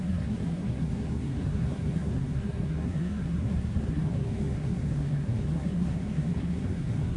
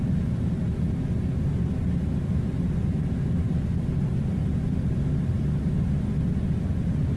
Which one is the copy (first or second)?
first